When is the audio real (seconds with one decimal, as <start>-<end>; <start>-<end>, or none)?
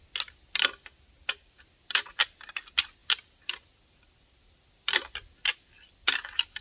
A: 0.0-6.6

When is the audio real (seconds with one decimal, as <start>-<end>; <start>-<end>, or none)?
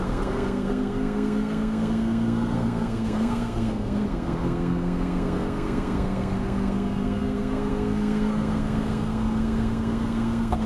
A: none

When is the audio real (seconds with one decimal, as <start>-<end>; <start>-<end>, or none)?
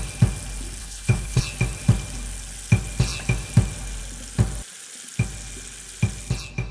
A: 0.0-0.8; 1.4-6.7